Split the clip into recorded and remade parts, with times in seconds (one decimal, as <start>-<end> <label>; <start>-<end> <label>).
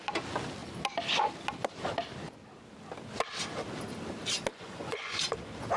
0.0-4.5 recorded; 4.5-5.2 remade; 5.2-5.8 recorded